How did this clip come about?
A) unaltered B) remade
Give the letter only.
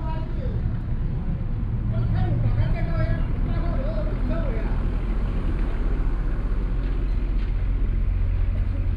A